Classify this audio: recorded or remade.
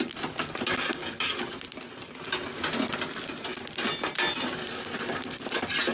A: recorded